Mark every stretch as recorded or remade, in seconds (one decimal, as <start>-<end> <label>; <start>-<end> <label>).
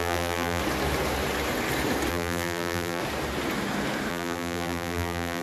0.0-0.6 remade; 0.6-2.1 recorded; 2.1-3.0 remade; 3.0-4.1 recorded; 4.1-5.4 remade